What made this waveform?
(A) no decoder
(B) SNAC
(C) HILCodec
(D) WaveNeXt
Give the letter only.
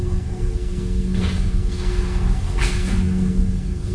B